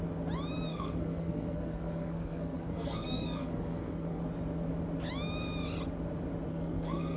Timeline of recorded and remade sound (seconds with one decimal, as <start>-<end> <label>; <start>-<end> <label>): 0.0-0.7 recorded; 0.7-4.2 remade; 4.2-6.5 recorded; 6.5-7.2 remade